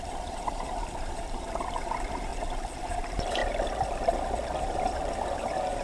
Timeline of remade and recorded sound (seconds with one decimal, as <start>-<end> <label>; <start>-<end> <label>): 0.0-2.3 remade; 2.3-2.8 recorded; 2.8-3.4 remade; 3.4-4.6 recorded; 4.6-5.8 remade